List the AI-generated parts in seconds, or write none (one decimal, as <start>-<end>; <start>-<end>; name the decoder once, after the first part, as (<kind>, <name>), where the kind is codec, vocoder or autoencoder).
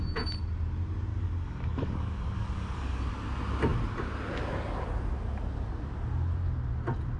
1.1-3.1 (codec, DAC)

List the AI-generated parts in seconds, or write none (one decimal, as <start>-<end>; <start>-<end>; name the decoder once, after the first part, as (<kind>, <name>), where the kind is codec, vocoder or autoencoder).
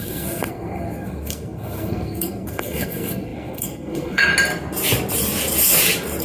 0.0-4.3 (codec, SNAC)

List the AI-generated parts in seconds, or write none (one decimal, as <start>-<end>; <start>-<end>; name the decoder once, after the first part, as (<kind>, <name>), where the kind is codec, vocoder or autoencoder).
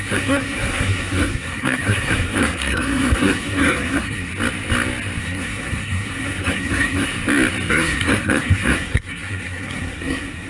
0.0-4.3 (codec, SNAC); 5.2-7.1; 7.7-10.5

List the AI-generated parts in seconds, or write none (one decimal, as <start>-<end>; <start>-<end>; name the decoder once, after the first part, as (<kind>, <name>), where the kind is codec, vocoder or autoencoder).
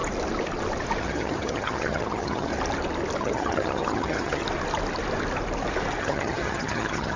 1.0-2.5 (vocoder, HiFi-GAN); 3.2-4.4; 6.0-7.2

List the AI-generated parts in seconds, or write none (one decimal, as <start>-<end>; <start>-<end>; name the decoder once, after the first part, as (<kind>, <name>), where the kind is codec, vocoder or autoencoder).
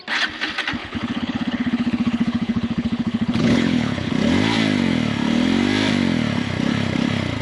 0.8-4.1 (codec, HILCodec)